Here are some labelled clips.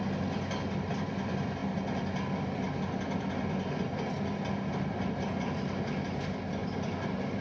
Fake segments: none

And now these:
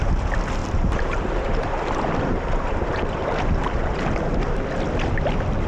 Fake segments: 0.6-4.0

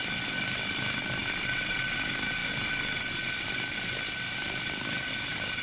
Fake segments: none